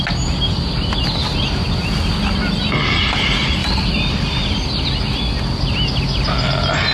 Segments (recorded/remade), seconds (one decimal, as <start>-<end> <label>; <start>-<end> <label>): 0.0-3.6 recorded; 3.6-5.4 remade; 5.4-6.9 recorded